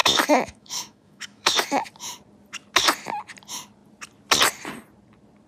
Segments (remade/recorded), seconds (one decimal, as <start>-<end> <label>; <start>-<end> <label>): 0.0-1.9 remade; 1.9-5.5 recorded